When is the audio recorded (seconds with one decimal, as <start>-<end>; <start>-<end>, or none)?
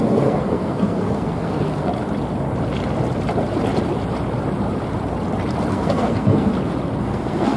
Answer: 1.9-5.7; 6.5-7.0